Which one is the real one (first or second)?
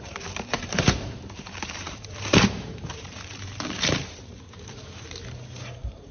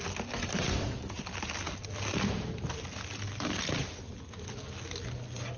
second